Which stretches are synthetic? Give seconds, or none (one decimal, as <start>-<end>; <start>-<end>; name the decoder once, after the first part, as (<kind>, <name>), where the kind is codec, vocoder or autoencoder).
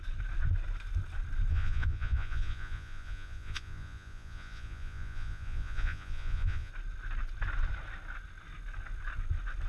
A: 1.5-6.7 (vocoder, Vocos)